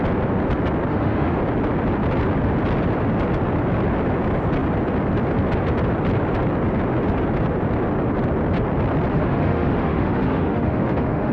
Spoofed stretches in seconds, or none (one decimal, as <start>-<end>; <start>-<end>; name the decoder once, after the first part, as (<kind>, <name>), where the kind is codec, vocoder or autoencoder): 0.9-1.4 (autoencoder, DAC-VAE); 9.1-11.3